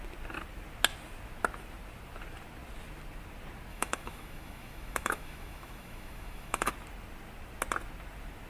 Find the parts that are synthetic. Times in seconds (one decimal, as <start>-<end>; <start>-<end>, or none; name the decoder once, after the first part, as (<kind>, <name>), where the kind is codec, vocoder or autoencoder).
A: 3.7-6.7 (autoencoder, DAC-VAE)